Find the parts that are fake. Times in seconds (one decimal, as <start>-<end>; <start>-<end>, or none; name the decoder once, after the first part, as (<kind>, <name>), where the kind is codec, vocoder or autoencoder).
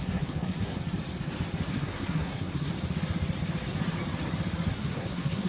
0.0-0.8 (codec, SNAC); 1.7-2.7; 4.7-5.5